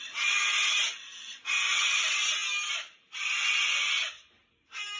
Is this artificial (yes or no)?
no